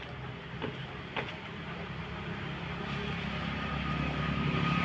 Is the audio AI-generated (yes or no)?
no